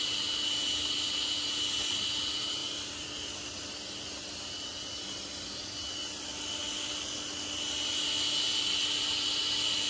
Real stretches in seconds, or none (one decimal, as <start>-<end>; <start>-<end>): 0.0-2.6; 3.6-9.9